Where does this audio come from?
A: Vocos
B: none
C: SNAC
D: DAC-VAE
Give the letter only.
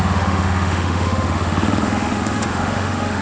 D